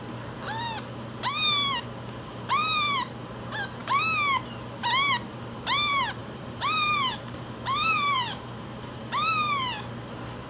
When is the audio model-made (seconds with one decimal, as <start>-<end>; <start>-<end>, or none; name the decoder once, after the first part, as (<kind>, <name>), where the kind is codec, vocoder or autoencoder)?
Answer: 6.2-9.1 (vocoder, BigVGAN v2)